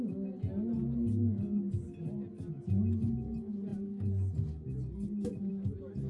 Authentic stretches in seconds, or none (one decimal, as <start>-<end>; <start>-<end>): 0.0-6.1